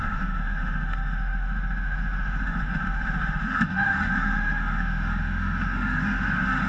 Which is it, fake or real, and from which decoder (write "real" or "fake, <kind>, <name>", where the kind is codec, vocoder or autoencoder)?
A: fake, autoencoder, DAC-VAE